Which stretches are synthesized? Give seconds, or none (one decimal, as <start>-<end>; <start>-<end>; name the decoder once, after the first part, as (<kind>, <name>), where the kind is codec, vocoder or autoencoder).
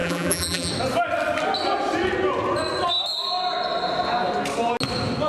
0.0-0.7 (vocoder, BigVGAN v2)